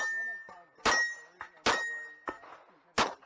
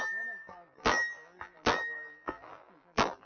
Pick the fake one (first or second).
second